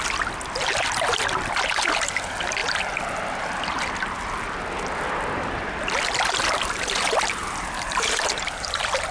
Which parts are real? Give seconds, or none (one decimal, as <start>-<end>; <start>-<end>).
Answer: 0.0-7.4